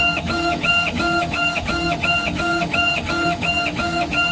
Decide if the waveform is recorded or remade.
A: remade